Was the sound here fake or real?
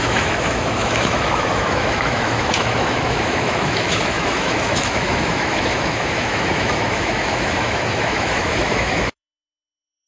fake